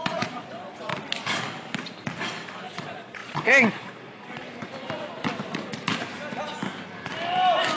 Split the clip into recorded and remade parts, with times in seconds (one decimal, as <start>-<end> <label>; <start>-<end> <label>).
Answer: 0.0-0.9 remade; 0.9-2.6 recorded; 2.6-4.4 remade; 4.4-7.8 recorded